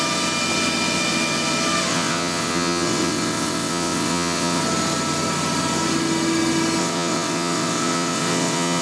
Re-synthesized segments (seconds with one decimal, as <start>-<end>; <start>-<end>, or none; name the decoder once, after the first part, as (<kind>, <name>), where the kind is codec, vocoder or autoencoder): 1.9-4.6 (vocoder, WaveNeXt); 6.8-8.8